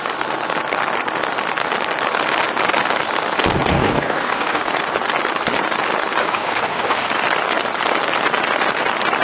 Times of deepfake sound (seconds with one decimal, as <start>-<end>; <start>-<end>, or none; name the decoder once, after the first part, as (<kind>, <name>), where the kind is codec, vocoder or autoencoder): 3.7-4.6 (codec, DAC); 6.2-7.1